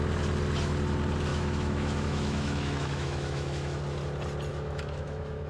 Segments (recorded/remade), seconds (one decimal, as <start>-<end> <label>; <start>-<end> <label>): 0.0-1.3 recorded; 1.3-3.8 remade; 3.8-4.5 recorded; 4.5-5.5 remade

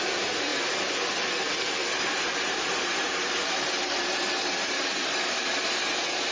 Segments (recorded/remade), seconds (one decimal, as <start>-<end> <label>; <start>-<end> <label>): 0.0-1.8 recorded; 1.8-5.6 remade; 5.6-6.3 recorded

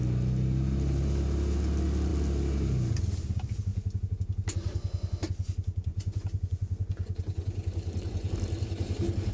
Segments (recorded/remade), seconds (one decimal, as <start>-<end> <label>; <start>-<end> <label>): 0.0-5.9 recorded; 5.9-8.3 remade; 8.3-9.3 recorded

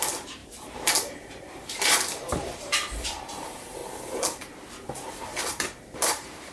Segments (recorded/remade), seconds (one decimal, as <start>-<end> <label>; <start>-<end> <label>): 0.0-3.8 remade; 3.8-5.4 recorded; 5.4-6.5 remade

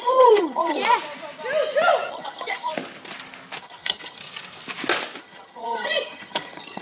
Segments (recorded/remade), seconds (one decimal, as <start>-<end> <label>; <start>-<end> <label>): 0.0-0.8 remade; 0.8-2.1 recorded; 2.1-2.7 remade; 2.7-3.6 recorded; 3.6-4.2 remade; 4.2-5.2 recorded; 5.2-6.8 remade

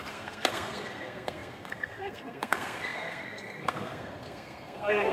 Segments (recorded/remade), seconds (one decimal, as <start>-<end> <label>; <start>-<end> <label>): 0.0-5.1 remade

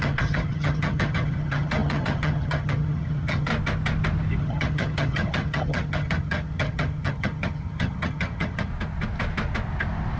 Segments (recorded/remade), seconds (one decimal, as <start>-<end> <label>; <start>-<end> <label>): 0.0-3.5 remade; 3.5-4.4 recorded; 4.4-8.7 remade; 8.7-10.2 recorded

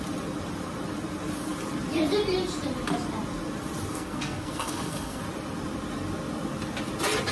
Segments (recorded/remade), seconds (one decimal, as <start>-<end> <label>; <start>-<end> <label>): 0.0-3.9 recorded; 3.9-5.2 remade; 5.2-7.3 recorded